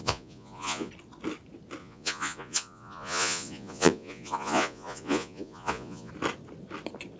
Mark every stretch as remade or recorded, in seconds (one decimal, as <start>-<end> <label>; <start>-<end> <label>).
0.0-0.9 remade; 0.9-1.8 recorded; 1.8-6.1 remade; 6.1-7.2 recorded